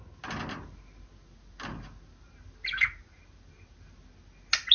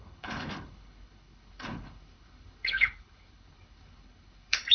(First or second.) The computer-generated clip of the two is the second